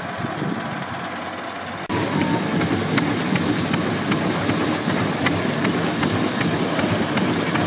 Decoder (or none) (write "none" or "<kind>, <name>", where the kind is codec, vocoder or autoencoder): none